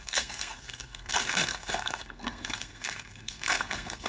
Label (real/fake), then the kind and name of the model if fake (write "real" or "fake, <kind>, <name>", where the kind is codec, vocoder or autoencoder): fake, codec, SNAC